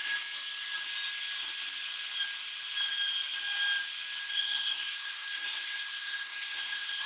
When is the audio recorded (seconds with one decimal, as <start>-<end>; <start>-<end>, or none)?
0.0-4.2